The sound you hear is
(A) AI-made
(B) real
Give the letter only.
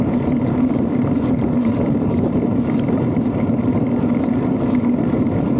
A